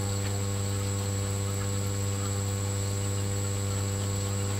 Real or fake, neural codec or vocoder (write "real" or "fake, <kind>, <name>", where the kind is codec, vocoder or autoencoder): real